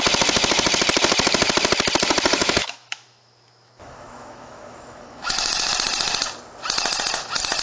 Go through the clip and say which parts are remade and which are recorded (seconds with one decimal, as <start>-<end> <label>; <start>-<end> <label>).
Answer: 0.0-2.4 recorded; 2.4-5.7 remade; 5.7-7.6 recorded